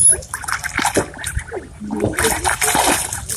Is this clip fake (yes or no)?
no